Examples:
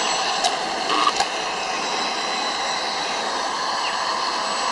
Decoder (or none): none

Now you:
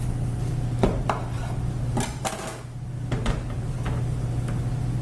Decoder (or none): none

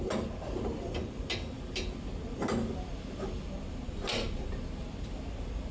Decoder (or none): none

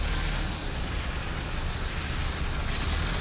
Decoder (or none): none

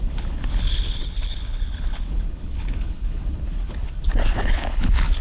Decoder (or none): codec, HILCodec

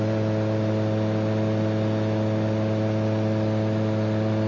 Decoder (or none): none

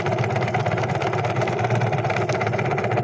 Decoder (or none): none